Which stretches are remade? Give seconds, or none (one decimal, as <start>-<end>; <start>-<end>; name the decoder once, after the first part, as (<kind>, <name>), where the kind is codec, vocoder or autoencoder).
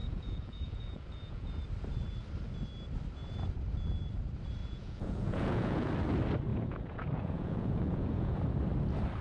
0.0-1.5 (vocoder, Vocos); 4.6-5.9; 6.5-8.4